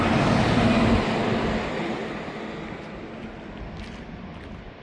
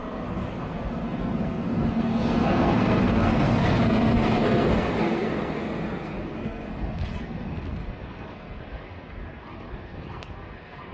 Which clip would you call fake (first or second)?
second